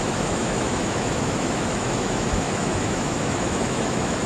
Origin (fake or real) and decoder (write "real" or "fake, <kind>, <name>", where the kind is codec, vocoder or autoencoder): fake, autoencoder, DAC-VAE